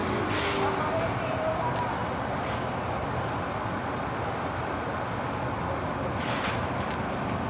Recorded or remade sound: recorded